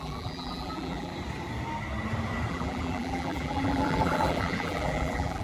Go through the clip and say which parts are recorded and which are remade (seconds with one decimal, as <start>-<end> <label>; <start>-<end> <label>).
0.0-1.1 remade; 1.1-2.5 recorded; 2.5-5.4 remade